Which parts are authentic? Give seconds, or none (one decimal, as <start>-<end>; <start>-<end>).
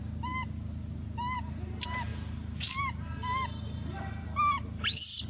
0.0-5.3